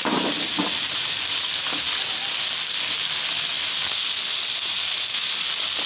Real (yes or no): yes